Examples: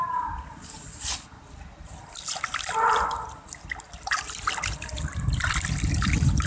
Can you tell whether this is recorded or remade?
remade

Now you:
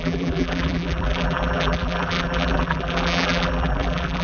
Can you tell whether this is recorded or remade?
remade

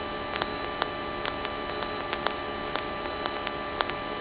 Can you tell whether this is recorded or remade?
recorded